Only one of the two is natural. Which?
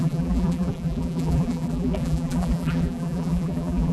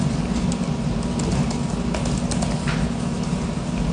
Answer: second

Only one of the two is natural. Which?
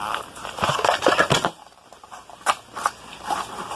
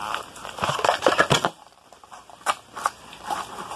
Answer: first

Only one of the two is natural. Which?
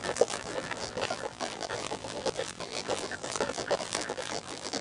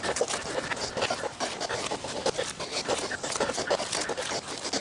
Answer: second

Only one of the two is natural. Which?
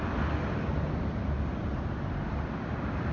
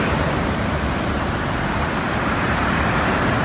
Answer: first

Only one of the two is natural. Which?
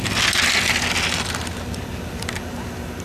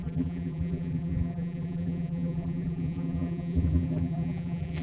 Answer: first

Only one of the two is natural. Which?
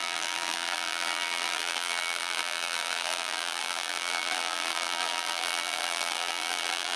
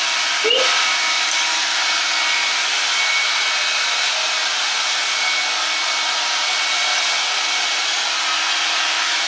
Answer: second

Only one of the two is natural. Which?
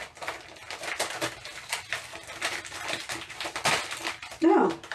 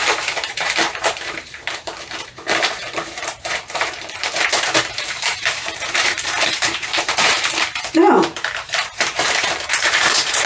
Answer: first